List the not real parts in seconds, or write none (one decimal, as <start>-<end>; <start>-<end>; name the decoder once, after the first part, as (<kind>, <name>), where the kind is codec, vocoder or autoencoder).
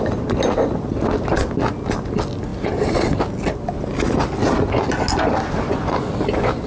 none